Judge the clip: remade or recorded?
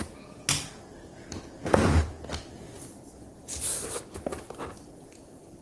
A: remade